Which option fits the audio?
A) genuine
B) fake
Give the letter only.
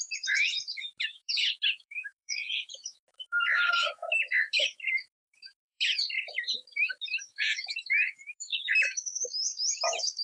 B